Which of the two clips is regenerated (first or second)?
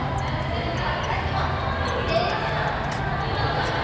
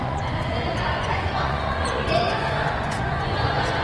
second